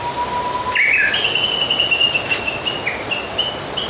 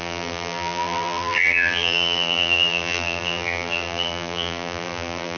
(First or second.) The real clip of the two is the first